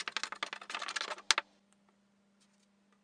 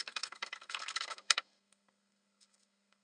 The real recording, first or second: first